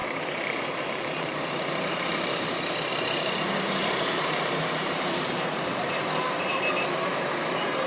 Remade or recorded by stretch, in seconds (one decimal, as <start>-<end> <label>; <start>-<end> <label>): 0.0-7.9 remade